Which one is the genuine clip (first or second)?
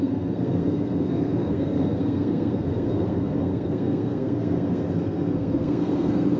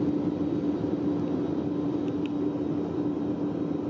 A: second